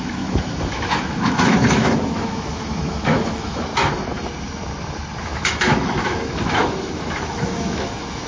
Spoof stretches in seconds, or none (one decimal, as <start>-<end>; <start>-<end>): 0.0-3.7; 5.2-8.3